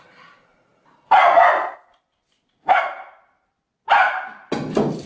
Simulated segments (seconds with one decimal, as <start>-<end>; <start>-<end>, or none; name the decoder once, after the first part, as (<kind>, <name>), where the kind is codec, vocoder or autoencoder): none